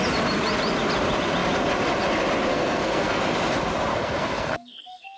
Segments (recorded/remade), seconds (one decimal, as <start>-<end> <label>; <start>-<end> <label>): 0.0-2.5 recorded; 2.5-3.2 remade; 3.2-3.9 recorded; 3.9-5.2 remade